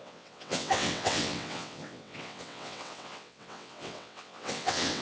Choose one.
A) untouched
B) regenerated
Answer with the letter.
B